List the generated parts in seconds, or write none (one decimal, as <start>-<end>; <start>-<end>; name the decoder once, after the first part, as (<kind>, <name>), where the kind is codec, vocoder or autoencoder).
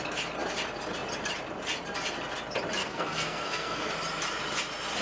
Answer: 2.8-3.9 (codec, SNAC)